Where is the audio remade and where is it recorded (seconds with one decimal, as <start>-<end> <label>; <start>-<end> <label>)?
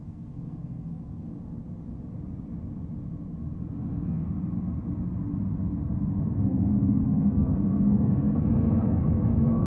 0.0-1.3 remade; 1.3-6.1 recorded; 6.1-9.7 remade